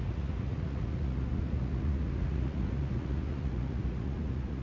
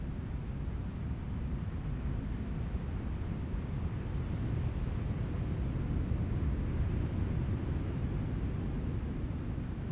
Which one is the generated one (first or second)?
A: first